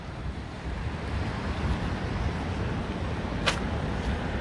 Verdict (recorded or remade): remade